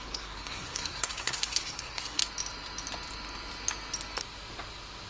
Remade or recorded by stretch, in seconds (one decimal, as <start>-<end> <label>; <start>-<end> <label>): 0.0-2.2 remade; 2.2-5.1 recorded